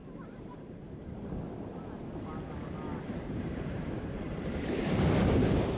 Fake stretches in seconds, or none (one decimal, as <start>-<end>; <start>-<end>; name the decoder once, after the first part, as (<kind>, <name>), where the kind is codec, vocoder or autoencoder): 0.0-0.5 (vocoder, BigVGAN v2); 2.9-5.8